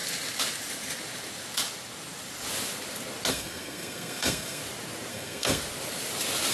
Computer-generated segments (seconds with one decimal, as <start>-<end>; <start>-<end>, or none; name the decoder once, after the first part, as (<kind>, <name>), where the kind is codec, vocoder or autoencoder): 3.3-4.6 (codec, SNAC); 5.1-5.6